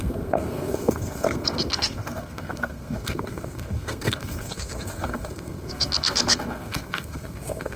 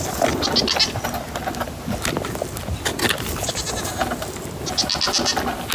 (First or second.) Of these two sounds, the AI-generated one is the first